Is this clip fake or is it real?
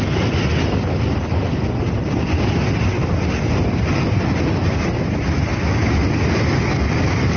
real